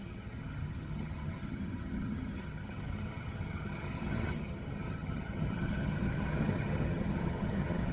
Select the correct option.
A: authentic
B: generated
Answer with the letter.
B